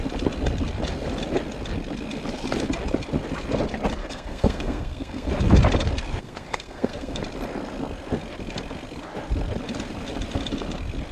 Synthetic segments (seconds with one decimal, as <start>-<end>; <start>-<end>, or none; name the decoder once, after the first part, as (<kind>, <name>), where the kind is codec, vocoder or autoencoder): 4.0-5.3 (codec, SNAC); 6.2-7.2